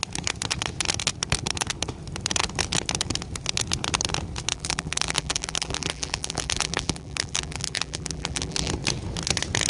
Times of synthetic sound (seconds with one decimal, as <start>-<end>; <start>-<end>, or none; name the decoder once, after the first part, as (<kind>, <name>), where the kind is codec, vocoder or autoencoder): 4.5-8.7 (vocoder, BigVGAN v2)